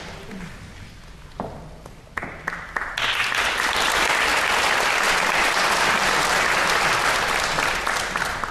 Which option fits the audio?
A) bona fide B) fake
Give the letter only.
A